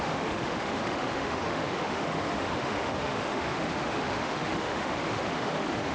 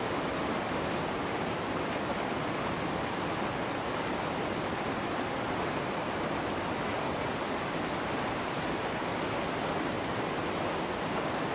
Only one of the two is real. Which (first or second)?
second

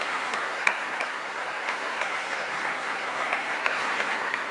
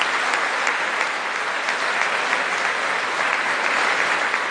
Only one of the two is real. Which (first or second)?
second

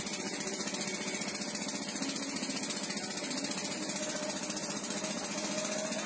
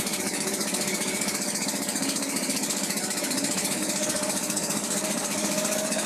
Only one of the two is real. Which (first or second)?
first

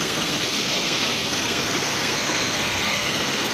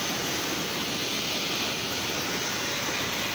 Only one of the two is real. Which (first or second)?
second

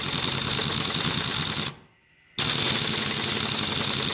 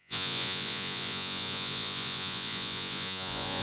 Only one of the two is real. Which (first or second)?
first